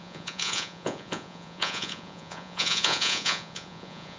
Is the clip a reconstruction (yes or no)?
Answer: yes